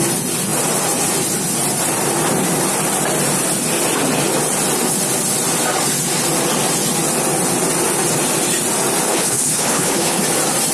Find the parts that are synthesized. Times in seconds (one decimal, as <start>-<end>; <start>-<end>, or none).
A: 9.1-10.2